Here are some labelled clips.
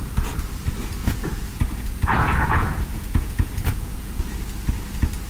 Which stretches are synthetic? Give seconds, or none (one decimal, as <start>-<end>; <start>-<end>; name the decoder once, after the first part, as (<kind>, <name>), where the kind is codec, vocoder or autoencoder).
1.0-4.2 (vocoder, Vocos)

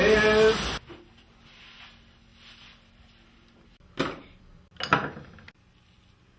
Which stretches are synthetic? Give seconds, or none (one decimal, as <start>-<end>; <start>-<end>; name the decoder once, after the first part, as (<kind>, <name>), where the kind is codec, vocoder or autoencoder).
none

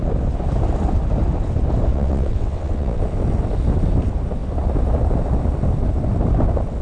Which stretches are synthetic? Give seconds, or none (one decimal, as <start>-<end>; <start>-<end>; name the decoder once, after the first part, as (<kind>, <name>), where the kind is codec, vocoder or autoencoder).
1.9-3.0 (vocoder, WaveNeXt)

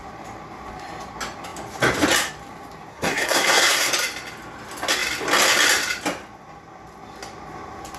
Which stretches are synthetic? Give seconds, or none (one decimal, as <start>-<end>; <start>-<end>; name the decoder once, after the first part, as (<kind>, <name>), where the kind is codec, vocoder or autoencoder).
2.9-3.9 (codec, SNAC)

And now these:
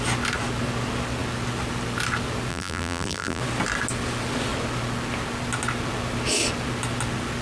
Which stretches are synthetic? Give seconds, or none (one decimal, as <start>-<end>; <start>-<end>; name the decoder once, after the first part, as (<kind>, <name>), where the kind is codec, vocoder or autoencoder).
2.5-3.4 (vocoder, BigVGAN v2)

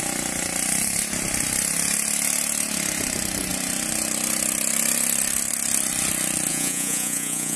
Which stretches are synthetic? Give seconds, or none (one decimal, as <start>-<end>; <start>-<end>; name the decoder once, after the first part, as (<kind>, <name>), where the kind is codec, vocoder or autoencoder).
6.5-7.6 (vocoder, Vocos)

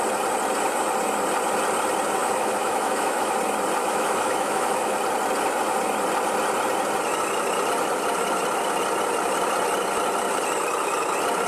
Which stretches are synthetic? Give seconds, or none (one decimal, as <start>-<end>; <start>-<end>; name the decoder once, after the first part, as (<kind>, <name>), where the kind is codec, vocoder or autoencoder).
2.2-3.3 (autoencoder, DAC-VAE); 3.8-4.9

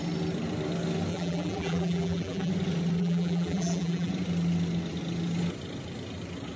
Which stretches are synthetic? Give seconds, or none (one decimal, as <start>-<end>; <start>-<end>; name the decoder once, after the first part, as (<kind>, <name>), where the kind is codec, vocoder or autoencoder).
1.1-2.5 (vocoder, BigVGAN v2); 3.0-4.1